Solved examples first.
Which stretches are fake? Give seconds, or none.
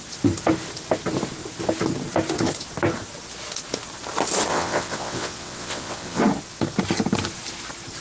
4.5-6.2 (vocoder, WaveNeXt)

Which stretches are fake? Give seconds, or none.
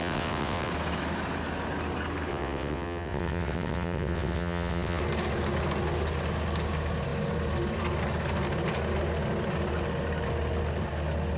0.0-0.7 (vocoder, WaveNeXt); 2.3-5.0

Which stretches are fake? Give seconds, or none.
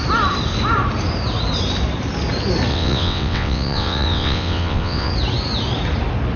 2.7-5.1 (vocoder, WaveNeXt)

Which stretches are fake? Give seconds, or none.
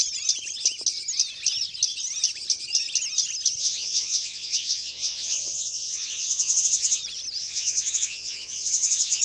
3.6-7.0 (vocoder, WaveNeXt); 7.4-9.2